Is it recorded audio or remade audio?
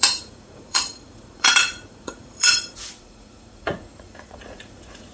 remade